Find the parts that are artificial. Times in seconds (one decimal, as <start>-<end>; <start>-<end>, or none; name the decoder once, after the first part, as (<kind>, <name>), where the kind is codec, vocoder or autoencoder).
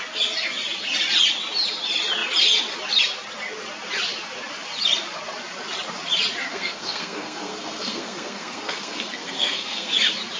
6.5-9.9 (codec, SNAC)